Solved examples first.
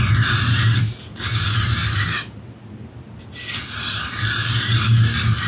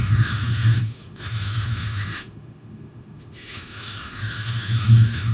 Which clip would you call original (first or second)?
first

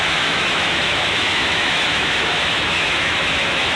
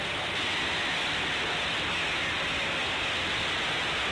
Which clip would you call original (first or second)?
second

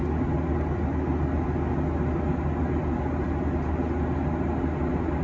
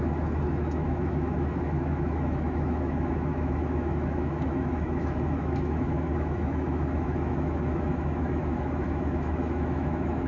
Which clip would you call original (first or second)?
first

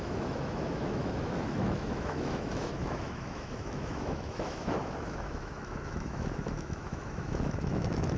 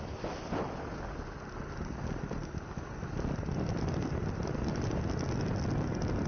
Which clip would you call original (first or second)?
second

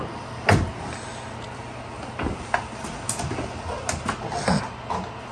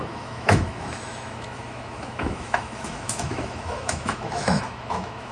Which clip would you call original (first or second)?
first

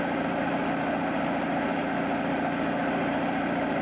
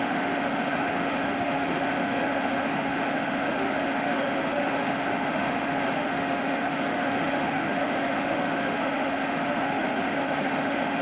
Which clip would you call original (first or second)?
first